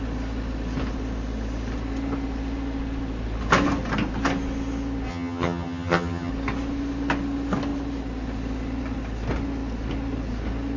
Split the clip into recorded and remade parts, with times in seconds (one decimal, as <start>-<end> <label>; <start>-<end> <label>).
0.0-5.1 recorded; 5.1-6.3 remade; 6.3-10.8 recorded

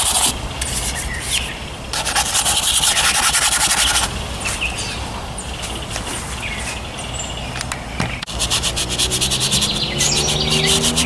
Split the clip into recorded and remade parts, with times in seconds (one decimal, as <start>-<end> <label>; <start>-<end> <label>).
0.0-11.1 recorded

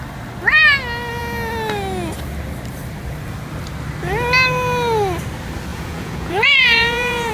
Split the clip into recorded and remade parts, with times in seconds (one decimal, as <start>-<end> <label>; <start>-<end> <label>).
0.0-5.7 recorded; 5.7-7.3 remade

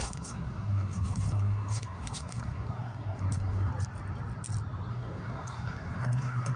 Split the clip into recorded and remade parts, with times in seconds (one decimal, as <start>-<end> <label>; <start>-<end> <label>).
0.0-3.7 remade; 3.7-4.9 recorded; 4.9-6.6 remade

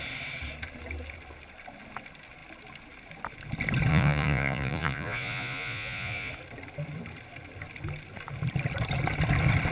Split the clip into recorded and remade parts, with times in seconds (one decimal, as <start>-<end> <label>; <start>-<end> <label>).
0.0-3.9 recorded; 3.9-6.3 remade; 6.3-9.7 recorded